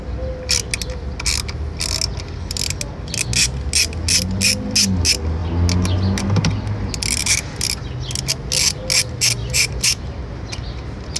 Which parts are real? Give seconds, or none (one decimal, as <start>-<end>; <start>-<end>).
0.0-9.4; 10.0-11.2